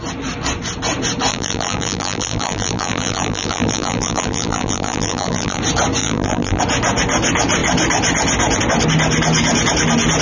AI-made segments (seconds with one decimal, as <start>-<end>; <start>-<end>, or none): 1.3-5.6; 6.0-6.6